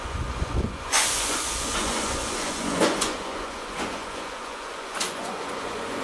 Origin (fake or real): fake